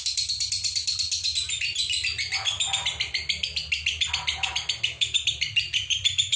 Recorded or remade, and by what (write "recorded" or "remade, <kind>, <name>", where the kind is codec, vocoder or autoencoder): recorded